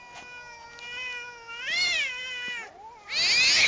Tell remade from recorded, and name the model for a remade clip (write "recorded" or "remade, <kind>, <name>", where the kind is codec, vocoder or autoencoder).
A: recorded